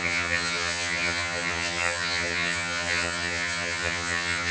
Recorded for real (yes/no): no